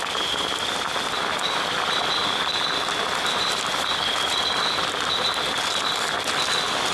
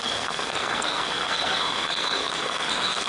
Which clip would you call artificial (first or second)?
second